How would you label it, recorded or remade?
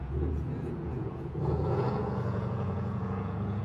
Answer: remade